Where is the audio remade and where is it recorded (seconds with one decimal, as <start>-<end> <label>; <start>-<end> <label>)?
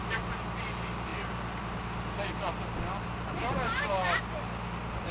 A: 0.0-5.1 recorded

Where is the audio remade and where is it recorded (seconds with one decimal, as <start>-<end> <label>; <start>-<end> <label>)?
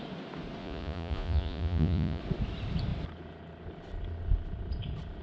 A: 0.0-0.6 recorded; 0.6-2.2 remade; 2.2-5.2 recorded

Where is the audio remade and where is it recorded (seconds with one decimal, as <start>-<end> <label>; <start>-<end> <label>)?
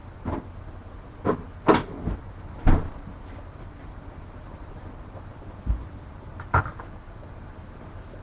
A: 0.0-6.7 recorded; 6.7-7.4 remade; 7.4-8.2 recorded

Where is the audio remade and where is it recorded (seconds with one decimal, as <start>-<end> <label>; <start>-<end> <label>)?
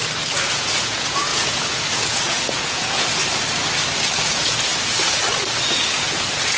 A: 0.0-0.5 recorded; 0.5-3.2 remade; 3.2-4.3 recorded; 4.3-4.7 remade; 4.7-5.8 recorded; 5.8-6.6 remade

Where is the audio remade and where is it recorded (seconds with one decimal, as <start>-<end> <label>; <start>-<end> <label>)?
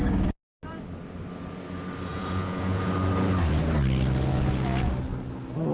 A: 0.0-2.1 recorded; 2.1-2.8 remade; 2.8-4.3 recorded; 4.3-4.9 remade; 4.9-5.7 recorded